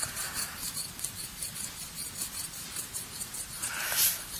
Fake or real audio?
fake